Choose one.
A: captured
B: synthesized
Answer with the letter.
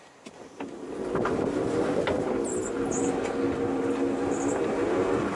A